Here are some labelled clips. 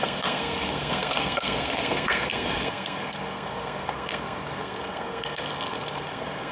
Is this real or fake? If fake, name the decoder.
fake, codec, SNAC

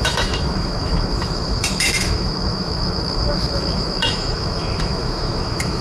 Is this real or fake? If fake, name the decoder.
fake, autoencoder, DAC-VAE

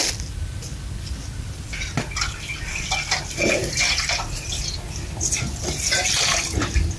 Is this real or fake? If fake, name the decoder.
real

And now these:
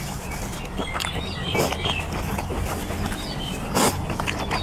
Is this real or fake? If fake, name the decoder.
real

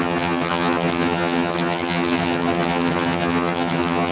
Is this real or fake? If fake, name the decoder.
fake, vocoder, HiFi-GAN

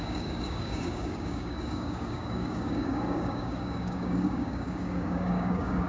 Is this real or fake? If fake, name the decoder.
fake, codec, DAC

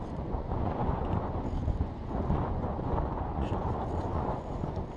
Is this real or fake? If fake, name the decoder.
fake, vocoder, Vocos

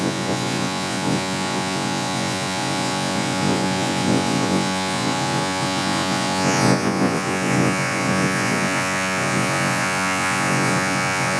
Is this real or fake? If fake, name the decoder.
fake, vocoder, Vocos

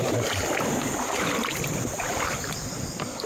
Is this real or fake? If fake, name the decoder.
real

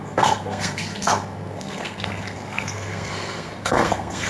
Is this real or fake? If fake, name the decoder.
fake, codec, SNAC